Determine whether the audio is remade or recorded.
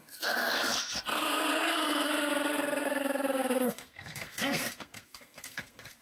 remade